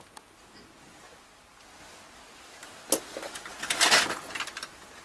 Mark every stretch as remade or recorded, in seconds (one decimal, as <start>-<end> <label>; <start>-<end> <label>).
0.0-5.0 recorded